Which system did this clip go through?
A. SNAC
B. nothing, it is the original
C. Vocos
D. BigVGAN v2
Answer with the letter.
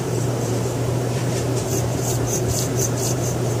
D